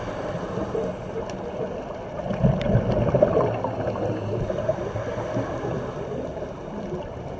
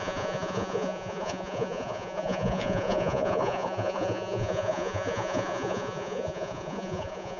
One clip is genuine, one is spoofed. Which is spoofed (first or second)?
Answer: second